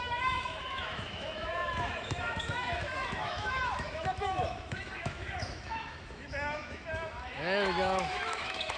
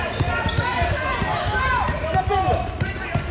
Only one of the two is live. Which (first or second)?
second